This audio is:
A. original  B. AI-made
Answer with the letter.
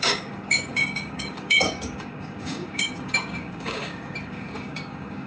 B